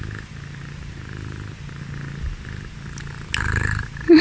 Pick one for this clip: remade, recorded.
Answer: recorded